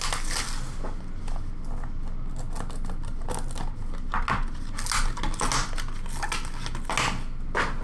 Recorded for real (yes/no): yes